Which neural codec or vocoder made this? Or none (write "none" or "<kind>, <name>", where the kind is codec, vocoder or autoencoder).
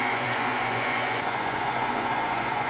vocoder, Vocos